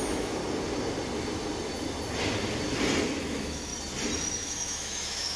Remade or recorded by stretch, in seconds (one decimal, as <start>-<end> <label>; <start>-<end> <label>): 0.0-0.4 remade; 0.4-3.2 recorded; 3.2-3.7 remade; 3.7-4.3 recorded; 4.3-5.4 remade